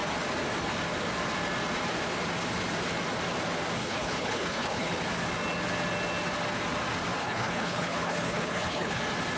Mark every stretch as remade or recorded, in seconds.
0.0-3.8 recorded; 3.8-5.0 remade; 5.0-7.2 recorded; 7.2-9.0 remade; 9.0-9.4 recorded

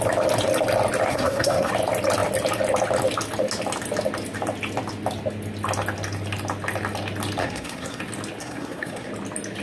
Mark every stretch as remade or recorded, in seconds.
0.0-1.1 recorded; 1.1-1.7 remade; 1.7-7.4 recorded; 7.4-8.0 remade; 8.0-8.4 recorded; 8.4-9.1 remade; 9.1-9.6 recorded

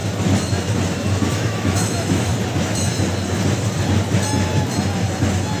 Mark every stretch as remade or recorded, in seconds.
0.0-1.3 recorded; 1.3-2.3 remade; 2.3-5.6 recorded

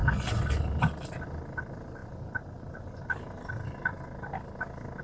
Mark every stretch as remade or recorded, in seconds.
0.0-5.0 recorded

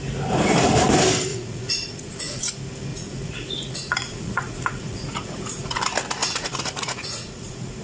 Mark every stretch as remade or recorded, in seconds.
0.0-1.3 recorded; 1.3-2.4 remade; 2.4-2.9 recorded; 2.9-5.8 remade; 5.8-6.2 recorded; 6.2-7.8 remade